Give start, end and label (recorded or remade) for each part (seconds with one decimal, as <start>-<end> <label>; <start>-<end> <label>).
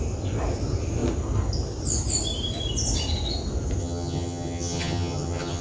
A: 0.0-3.8 recorded; 3.8-5.6 remade